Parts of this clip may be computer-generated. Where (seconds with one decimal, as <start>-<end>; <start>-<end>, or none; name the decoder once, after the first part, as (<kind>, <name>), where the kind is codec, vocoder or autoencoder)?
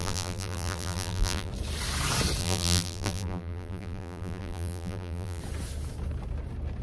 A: 0.0-1.5 (vocoder, BigVGAN v2); 2.4-5.4